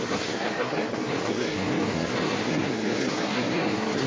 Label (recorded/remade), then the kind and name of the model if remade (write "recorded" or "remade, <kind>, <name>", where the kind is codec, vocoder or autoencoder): remade, codec, SNAC